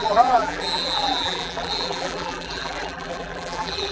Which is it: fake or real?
fake